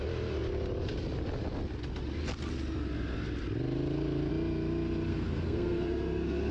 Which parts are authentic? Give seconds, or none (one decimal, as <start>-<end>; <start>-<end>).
0.0-5.1